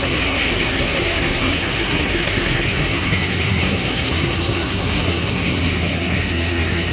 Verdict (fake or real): fake